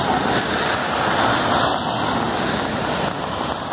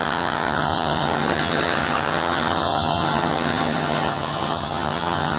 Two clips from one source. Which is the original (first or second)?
first